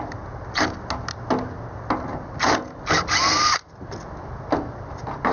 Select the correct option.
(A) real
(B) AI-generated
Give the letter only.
A